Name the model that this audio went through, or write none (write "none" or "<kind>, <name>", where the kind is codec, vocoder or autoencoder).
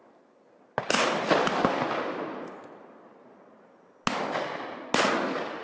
none